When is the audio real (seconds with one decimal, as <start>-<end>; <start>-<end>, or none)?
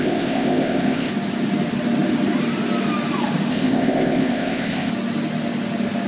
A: 1.1-3.5; 4.9-6.1